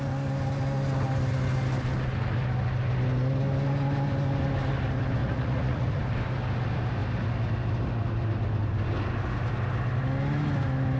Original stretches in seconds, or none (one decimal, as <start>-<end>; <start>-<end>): 0.0-5.2; 6.0-11.0

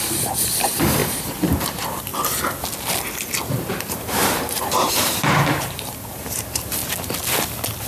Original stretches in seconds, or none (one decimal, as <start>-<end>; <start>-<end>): 2.1-3.5; 6.8-7.9

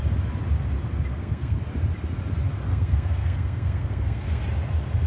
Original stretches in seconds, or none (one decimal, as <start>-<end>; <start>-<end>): 0.0-1.1; 1.6-2.7; 4.4-5.1

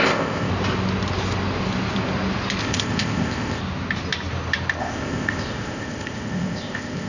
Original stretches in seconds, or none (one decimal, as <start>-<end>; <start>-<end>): 0.5-2.6; 3.6-4.8

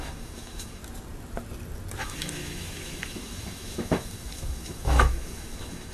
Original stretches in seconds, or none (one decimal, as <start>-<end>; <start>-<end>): 0.8-2.0